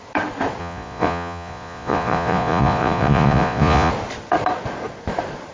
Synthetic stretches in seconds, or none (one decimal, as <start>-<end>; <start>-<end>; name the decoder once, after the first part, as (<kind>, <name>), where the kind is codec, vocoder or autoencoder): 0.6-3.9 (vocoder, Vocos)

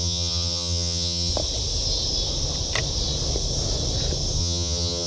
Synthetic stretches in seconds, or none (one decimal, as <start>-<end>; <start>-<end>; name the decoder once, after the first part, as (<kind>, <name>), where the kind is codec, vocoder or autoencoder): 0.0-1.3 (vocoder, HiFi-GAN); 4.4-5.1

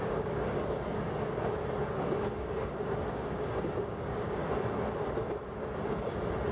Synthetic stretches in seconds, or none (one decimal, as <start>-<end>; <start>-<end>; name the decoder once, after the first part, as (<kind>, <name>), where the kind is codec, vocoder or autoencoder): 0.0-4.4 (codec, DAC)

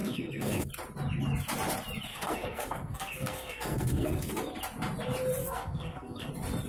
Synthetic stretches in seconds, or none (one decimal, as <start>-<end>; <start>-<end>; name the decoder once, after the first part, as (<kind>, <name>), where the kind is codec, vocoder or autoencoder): 0.0-0.7 (codec, SNAC); 2.1-4.3; 5.4-6.3

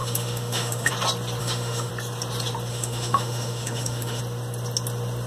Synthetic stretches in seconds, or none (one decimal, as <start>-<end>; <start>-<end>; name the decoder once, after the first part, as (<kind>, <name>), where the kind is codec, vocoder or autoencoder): 0.0-0.9 (autoencoder, DAC-VAE); 1.4-1.9; 2.7-4.2

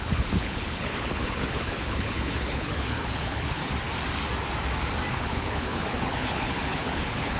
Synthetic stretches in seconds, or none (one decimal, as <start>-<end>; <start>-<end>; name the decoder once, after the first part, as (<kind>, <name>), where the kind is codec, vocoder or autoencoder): 0.0-3.6 (codec, HILCodec); 5.1-7.4

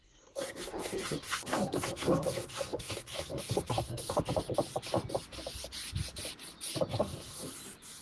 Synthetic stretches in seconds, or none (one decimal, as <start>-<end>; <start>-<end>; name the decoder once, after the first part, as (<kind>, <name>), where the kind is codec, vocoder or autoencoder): 0.0-4.2 (codec, SNAC); 6.9-7.5

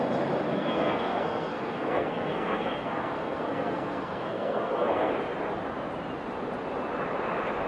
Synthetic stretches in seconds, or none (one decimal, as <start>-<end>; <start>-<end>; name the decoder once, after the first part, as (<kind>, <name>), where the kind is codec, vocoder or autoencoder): 0.5-5.1 (codec, SNAC)